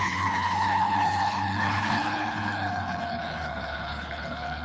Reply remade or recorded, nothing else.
remade